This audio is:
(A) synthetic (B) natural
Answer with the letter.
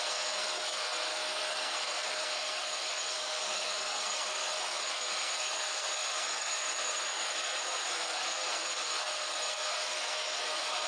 A